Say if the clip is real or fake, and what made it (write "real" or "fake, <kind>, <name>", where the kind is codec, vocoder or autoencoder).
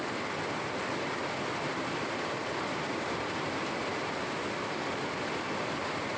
real